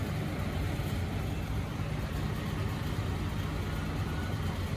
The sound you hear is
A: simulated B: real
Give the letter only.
B